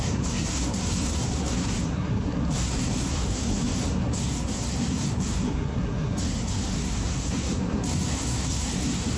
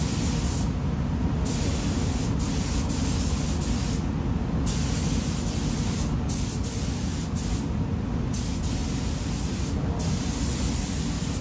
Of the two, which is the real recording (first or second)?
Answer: second